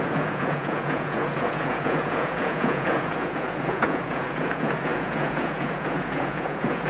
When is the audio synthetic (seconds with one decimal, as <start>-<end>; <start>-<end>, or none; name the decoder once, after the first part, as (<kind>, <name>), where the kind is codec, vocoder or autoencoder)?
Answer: 0.0-6.9 (vocoder, Vocos)